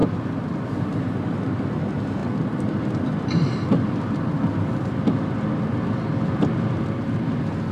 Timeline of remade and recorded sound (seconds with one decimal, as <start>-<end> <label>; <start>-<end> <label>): 0.0-7.7 recorded